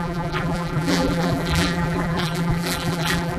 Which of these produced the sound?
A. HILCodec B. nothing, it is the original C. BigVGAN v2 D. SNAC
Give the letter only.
C